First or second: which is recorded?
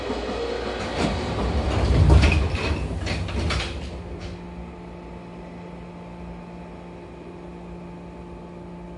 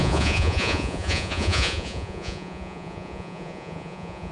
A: first